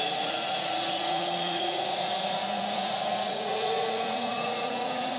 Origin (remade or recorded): remade